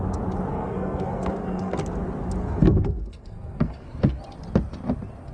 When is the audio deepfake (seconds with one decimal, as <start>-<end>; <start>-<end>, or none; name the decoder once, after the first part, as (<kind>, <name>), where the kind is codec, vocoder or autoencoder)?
0.5-1.8 (codec, SNAC); 2.4-4.2